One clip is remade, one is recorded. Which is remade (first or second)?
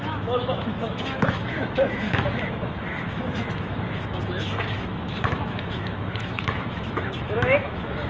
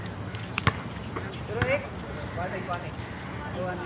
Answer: first